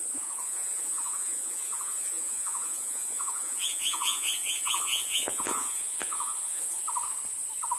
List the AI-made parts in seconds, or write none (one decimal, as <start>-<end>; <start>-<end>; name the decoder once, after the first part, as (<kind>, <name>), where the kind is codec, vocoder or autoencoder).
0.0-6.8 (vocoder, Vocos)